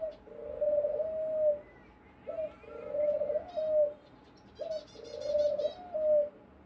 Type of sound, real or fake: real